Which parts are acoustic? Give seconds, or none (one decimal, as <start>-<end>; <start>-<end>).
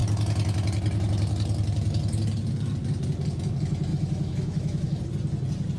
0.0-3.9; 5.0-5.8